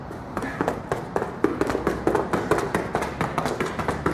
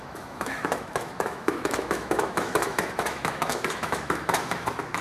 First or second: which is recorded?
first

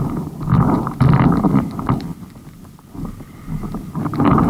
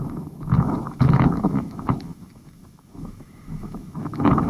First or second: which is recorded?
first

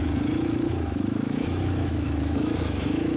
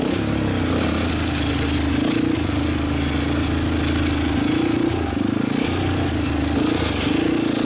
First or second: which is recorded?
second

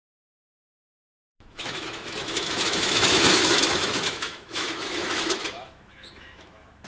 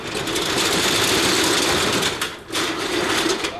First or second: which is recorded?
second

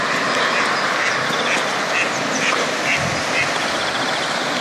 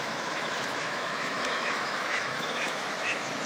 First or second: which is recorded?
first